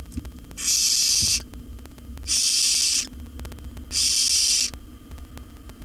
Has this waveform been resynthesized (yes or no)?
no